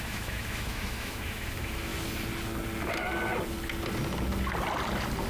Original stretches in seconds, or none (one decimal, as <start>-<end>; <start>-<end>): 1.9-5.3